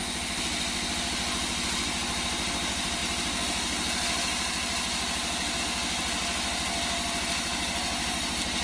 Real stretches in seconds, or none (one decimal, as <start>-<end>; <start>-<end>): 0.0-8.6